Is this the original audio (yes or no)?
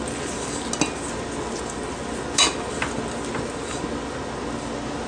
yes